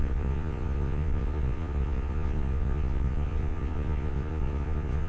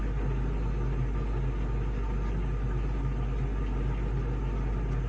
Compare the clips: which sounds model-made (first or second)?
first